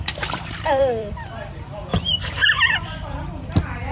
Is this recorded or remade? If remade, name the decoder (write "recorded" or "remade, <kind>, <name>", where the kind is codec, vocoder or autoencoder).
remade, vocoder, BigVGAN v2